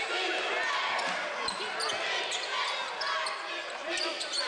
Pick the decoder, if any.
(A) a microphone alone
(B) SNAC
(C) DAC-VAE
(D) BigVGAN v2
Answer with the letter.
A